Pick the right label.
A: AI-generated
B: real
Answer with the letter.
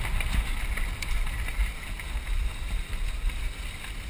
B